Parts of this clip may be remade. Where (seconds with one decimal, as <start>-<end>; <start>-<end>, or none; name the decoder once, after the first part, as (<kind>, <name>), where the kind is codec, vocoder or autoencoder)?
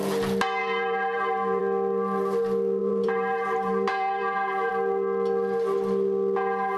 0.6-1.6 (vocoder, BigVGAN v2); 2.8-4.7